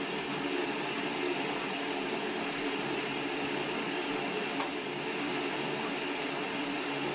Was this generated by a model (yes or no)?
no